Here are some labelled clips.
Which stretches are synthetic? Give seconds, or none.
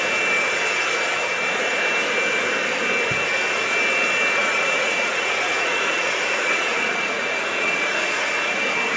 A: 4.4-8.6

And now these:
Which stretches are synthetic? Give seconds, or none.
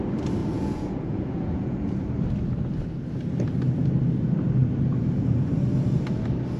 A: 0.4-2.1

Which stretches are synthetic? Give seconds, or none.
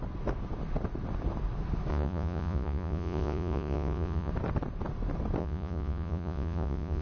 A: 1.9-4.3; 5.4-7.0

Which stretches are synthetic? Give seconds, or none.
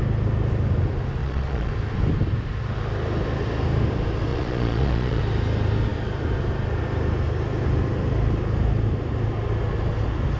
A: 1.2-1.7; 4.3-5.2